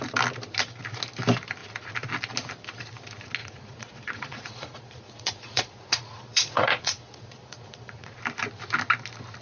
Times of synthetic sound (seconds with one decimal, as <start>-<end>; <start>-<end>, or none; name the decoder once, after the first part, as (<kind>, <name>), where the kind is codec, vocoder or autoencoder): 3.4-8.2 (vocoder, Vocos)